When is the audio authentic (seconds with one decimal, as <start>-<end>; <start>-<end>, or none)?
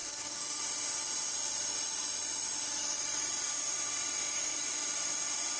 0.6-5.6